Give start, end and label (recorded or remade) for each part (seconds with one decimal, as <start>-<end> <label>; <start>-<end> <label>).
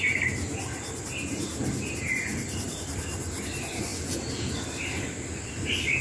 0.0-3.9 recorded; 3.9-4.5 remade; 4.5-6.0 recorded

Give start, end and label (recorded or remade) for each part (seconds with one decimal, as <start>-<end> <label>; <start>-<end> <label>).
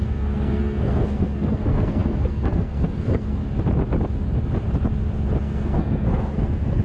0.0-3.4 remade; 3.4-5.4 recorded; 5.4-6.8 remade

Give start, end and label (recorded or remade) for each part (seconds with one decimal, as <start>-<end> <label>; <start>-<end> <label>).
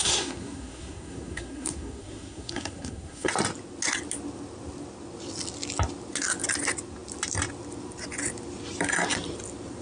0.0-3.3 remade; 3.3-9.8 recorded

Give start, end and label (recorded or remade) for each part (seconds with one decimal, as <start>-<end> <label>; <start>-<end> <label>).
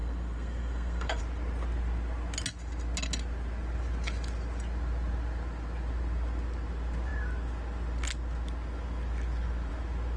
0.0-1.2 remade; 1.2-10.2 recorded